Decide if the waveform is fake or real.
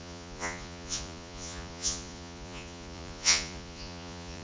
fake